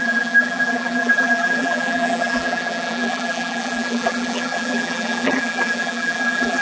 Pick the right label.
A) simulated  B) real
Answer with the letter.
A